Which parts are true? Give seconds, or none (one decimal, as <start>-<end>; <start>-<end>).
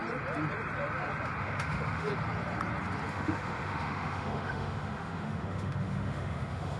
0.0-1.4; 2.1-3.1